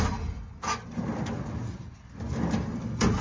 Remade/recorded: recorded